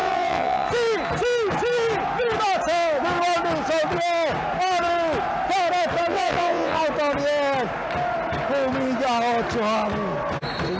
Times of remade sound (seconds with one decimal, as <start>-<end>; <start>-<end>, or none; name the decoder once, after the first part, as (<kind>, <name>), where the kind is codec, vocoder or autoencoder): 0.0-0.7 (vocoder, WaveNeXt); 6.1-6.8